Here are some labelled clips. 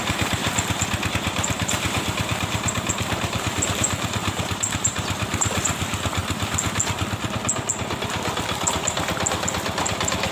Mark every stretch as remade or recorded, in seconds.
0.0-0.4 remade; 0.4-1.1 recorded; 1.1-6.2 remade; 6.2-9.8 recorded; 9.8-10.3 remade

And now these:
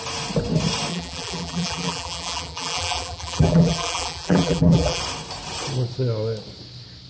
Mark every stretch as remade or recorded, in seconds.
0.0-0.9 recorded; 0.9-5.0 remade; 5.0-7.1 recorded

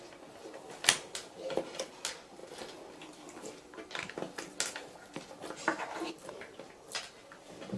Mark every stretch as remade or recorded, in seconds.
0.0-7.8 recorded

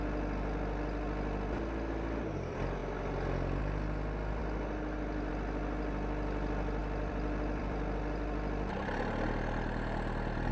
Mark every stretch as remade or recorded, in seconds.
0.0-6.8 recorded; 6.8-10.5 remade

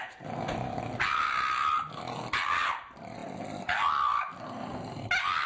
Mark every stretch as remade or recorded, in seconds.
0.0-5.5 recorded

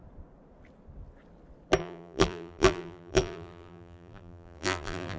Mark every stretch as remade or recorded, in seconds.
0.0-1.8 recorded; 1.8-5.2 remade

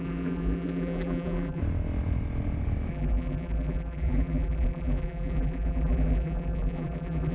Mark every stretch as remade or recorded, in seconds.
0.0-1.6 remade; 1.6-2.9 recorded; 2.9-7.3 remade

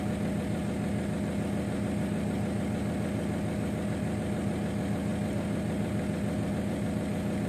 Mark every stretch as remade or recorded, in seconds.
0.0-7.5 recorded